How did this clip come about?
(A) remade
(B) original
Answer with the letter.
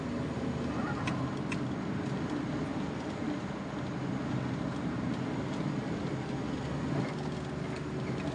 B